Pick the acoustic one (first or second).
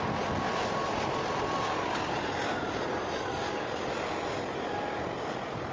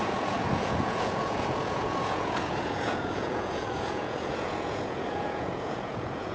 first